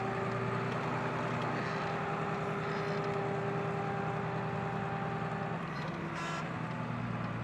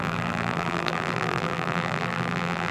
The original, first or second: first